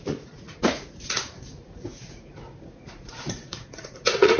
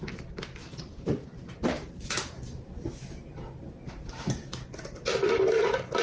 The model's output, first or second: first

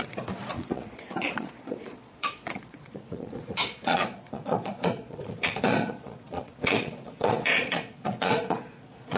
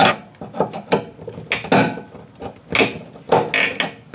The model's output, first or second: first